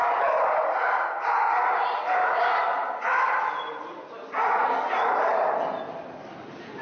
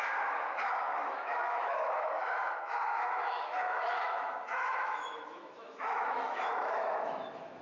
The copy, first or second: second